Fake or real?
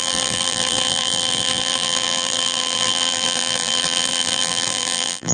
fake